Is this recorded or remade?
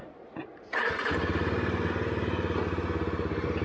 recorded